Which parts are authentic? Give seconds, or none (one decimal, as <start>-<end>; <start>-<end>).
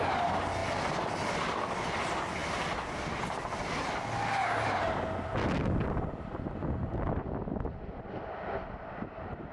0.0-9.5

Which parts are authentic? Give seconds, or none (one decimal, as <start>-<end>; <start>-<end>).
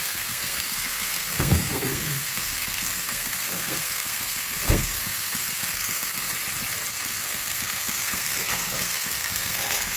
6.3-6.9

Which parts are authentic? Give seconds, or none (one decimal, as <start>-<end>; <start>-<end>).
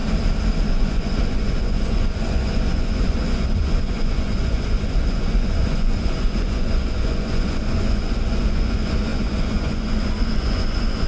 0.0-0.7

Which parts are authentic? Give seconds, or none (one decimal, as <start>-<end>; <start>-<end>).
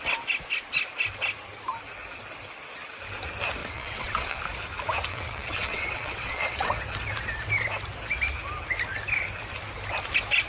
0.0-3.6; 4.4-5.1; 6.8-10.5